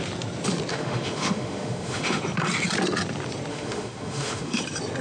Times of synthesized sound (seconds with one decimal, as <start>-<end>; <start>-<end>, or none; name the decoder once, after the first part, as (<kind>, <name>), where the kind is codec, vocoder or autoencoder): 0.7-2.2 (autoencoder, DAC-VAE); 3.5-4.6